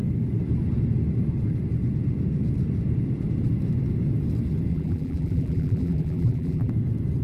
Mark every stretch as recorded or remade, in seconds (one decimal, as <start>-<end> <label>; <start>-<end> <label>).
0.0-4.7 recorded; 4.7-6.7 remade; 6.7-7.2 recorded